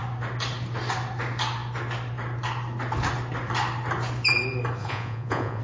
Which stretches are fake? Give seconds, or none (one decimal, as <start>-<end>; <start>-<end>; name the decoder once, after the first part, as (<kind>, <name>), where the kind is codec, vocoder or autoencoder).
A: 4.8-5.6 (vocoder, Vocos)